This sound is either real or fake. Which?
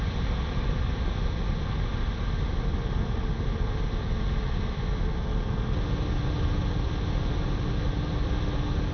real